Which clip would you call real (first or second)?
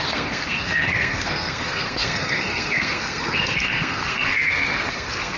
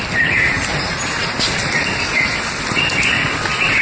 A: second